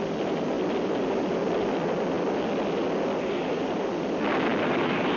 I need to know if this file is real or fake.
real